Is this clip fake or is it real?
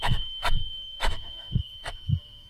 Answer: fake